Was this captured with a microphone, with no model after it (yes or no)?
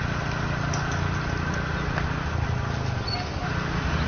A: yes